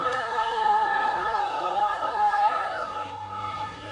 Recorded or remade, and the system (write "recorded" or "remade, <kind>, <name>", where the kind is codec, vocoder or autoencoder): remade, codec, SNAC